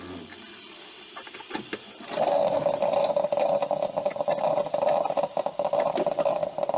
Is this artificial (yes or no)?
no